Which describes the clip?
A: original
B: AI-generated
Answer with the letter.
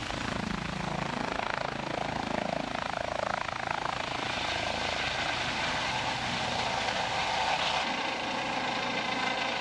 A